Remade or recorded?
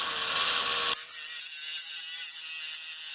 recorded